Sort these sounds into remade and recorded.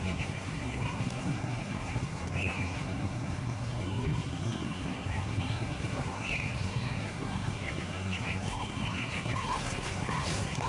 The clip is remade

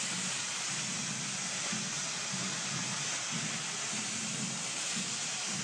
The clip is recorded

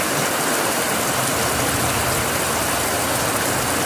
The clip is recorded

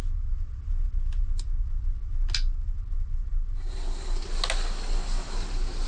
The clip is recorded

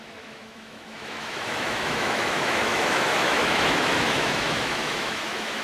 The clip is remade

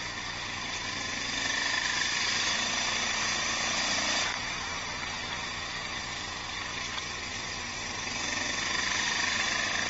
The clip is recorded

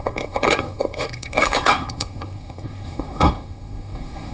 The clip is remade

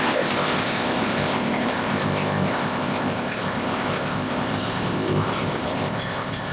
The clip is remade